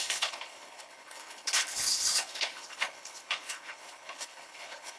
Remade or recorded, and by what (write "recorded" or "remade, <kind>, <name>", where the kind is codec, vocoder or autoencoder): remade, codec, HILCodec